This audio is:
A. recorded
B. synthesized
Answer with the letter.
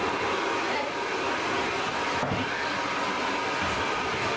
A